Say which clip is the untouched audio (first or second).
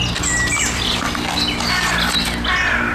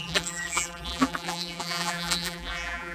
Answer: first